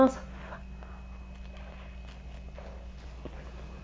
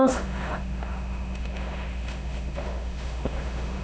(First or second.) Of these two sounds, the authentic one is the first